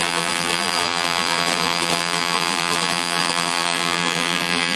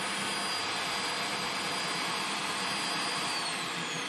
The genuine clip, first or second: second